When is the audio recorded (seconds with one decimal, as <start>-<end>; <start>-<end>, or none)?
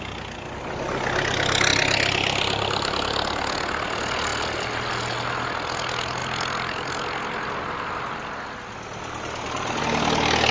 0.0-10.5